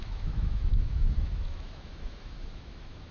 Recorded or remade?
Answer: remade